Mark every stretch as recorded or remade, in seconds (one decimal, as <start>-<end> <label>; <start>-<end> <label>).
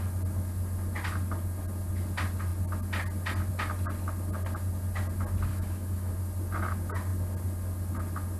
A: 0.0-5.5 recorded; 5.5-6.1 remade; 6.1-8.4 recorded